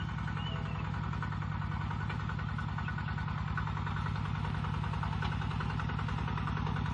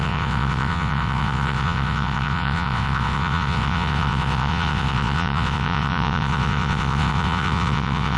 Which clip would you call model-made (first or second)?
second